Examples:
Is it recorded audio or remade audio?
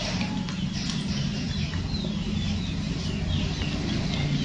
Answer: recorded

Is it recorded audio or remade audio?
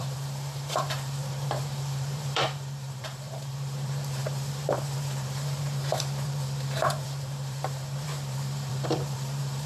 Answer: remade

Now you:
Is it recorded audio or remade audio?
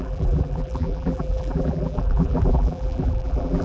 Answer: remade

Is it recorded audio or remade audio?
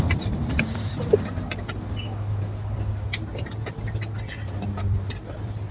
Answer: recorded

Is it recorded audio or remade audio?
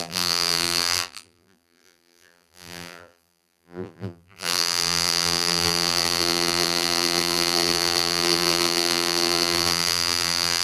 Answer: remade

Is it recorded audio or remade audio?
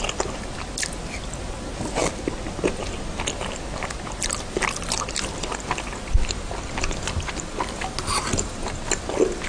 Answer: recorded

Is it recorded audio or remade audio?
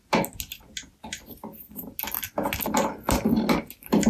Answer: recorded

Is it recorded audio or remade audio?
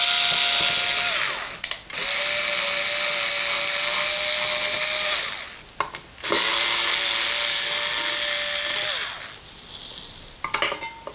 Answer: recorded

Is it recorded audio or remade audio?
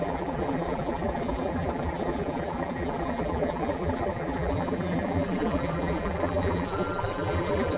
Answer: remade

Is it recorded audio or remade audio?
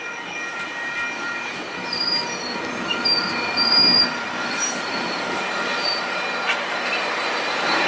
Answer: remade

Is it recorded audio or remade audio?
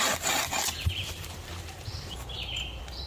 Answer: remade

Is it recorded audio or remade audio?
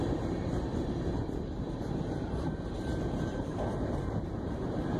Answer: remade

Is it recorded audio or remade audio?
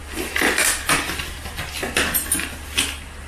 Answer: recorded